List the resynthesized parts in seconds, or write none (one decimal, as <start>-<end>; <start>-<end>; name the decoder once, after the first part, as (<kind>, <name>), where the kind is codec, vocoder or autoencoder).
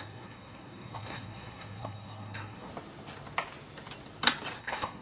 0.0-2.7 (codec, SNAC); 4.6-5.0